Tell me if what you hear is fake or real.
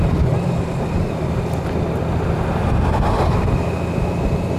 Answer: real